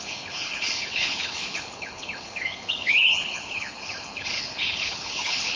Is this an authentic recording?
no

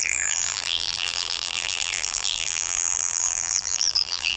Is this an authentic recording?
no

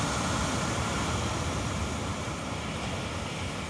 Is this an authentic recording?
yes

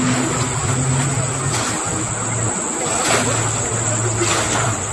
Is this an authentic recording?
yes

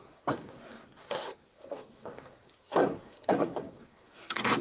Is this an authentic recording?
no